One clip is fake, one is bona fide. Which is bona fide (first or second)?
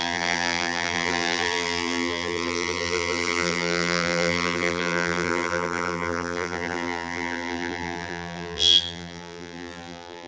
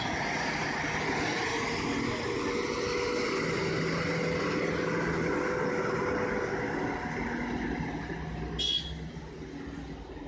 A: second